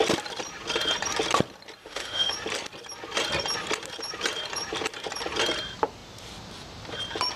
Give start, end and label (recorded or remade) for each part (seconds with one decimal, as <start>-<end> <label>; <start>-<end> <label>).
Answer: 0.0-1.8 recorded; 1.8-2.3 remade; 2.3-7.4 recorded

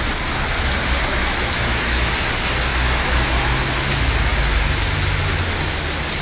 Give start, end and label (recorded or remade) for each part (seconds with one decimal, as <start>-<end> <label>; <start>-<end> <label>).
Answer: 0.0-1.1 recorded; 1.1-2.1 remade; 2.1-2.7 recorded; 2.7-3.6 remade; 3.6-6.2 recorded

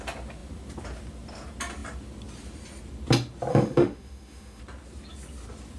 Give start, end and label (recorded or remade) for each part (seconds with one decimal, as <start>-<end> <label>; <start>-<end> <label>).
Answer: 0.0-3.5 recorded; 3.5-4.6 remade; 4.6-5.8 recorded

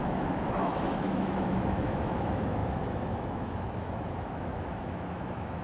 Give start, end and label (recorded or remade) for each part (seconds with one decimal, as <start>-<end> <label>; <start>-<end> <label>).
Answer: 0.0-5.6 remade